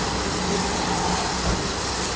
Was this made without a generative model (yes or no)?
yes